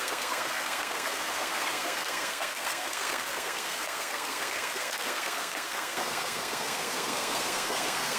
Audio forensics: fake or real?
fake